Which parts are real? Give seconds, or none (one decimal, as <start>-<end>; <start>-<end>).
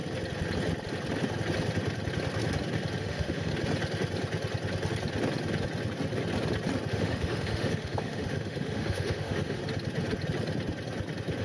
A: 0.0-3.0; 3.5-6.9; 9.6-11.4